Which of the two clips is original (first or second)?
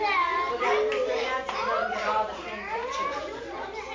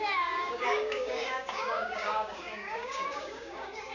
first